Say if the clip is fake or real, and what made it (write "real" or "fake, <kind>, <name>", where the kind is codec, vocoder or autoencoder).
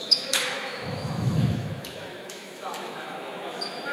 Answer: fake, autoencoder, DAC-VAE